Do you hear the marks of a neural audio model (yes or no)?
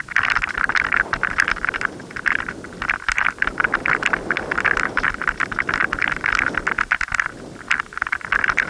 no